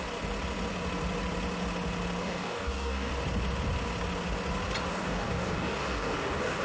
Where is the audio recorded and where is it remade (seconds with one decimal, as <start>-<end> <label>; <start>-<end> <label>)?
0.0-2.2 recorded; 2.2-3.1 remade; 3.1-4.9 recorded; 4.9-6.6 remade